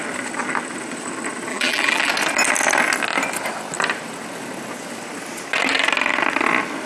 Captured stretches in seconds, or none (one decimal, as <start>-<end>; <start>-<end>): 0.0-1.5; 2.1-6.9